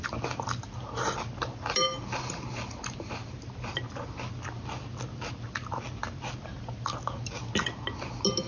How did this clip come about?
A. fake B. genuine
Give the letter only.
B